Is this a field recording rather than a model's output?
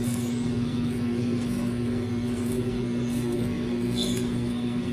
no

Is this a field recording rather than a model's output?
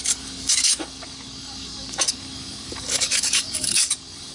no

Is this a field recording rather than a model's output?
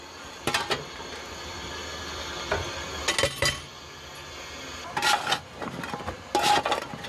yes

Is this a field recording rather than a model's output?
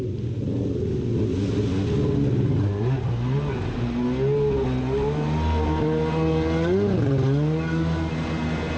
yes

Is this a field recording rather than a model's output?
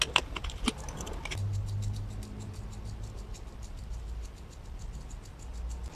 yes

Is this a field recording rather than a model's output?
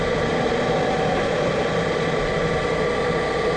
yes